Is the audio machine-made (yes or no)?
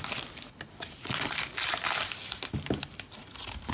no